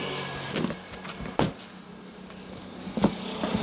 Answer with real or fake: real